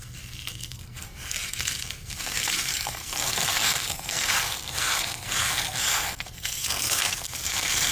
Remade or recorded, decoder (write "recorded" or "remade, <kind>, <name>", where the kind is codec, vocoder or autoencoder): remade, codec, SNAC